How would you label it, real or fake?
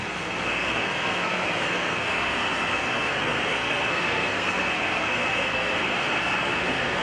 fake